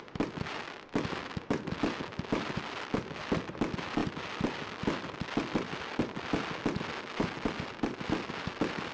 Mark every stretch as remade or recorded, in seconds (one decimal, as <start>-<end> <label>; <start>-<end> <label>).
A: 0.0-8.9 recorded

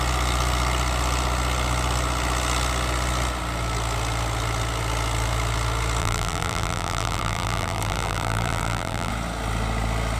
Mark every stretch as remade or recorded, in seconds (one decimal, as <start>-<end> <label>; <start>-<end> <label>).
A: 0.0-6.0 recorded; 6.0-9.1 remade; 9.1-10.2 recorded